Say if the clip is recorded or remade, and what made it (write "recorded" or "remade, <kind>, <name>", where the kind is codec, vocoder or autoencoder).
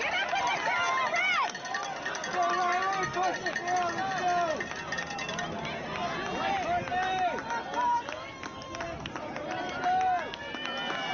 recorded